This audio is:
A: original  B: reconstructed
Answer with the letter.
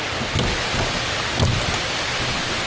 A